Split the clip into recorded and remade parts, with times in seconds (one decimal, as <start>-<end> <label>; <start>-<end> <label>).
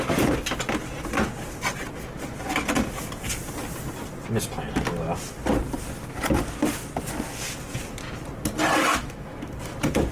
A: 0.0-8.9 recorded; 8.9-9.5 remade; 9.5-10.1 recorded